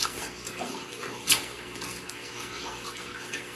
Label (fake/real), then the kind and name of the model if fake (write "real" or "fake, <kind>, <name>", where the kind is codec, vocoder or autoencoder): fake, codec, SNAC